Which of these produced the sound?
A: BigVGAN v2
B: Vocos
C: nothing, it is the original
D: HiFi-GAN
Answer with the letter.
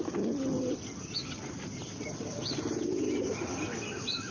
C